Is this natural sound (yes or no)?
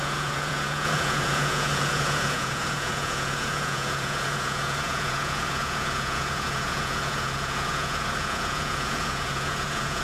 no